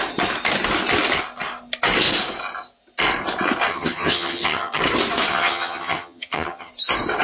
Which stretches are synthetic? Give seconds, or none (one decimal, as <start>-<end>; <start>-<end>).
3.7-4.8; 5.3-6.7